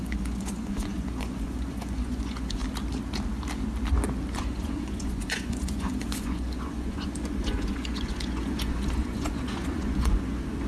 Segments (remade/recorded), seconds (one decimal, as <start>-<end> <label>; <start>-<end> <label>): 0.0-2.6 remade; 2.6-4.4 recorded; 4.4-10.7 remade